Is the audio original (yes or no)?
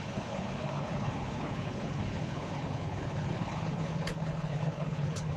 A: no